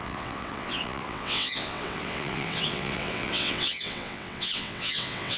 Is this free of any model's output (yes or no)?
no